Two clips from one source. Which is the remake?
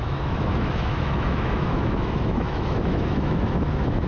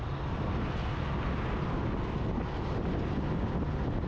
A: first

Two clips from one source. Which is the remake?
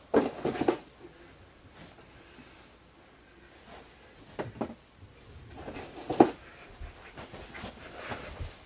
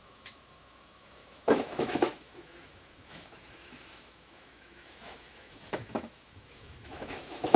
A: second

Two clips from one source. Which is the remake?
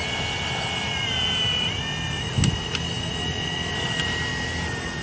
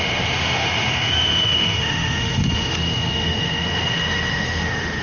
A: second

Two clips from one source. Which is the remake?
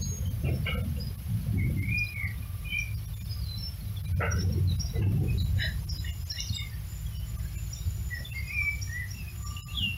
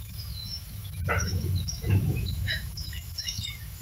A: second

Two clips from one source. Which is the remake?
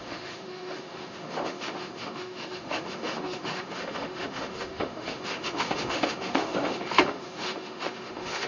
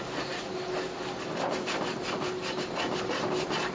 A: first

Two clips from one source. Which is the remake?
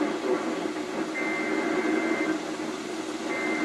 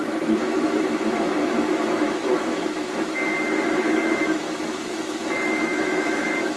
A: second